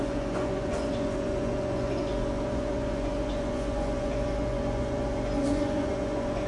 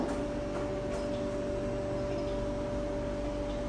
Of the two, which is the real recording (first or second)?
second